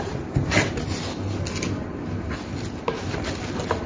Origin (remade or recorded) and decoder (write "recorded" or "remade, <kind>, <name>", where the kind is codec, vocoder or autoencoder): recorded